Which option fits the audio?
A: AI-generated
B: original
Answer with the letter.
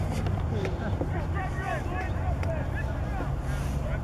B